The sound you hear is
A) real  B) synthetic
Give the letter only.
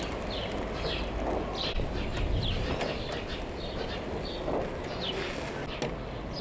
A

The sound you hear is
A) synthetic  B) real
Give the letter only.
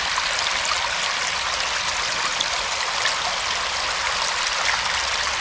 B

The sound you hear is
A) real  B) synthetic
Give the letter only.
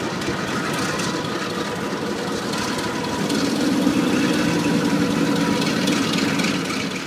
A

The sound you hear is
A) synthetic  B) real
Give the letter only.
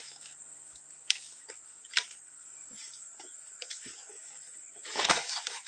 A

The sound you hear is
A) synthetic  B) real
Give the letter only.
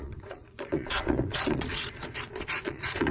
A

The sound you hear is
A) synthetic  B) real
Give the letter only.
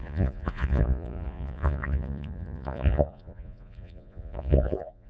A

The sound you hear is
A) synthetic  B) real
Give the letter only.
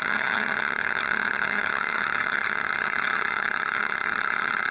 A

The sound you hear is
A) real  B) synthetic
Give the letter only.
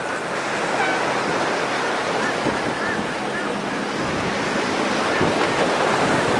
A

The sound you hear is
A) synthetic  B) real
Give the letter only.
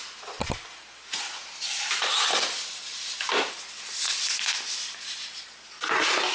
B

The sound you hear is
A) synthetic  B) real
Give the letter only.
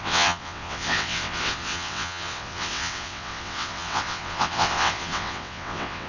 A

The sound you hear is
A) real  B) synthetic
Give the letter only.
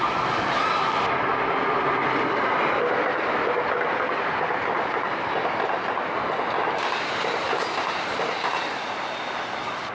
A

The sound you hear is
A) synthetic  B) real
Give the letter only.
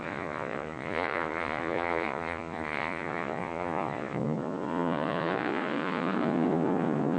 A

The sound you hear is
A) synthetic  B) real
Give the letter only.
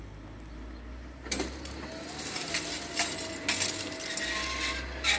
B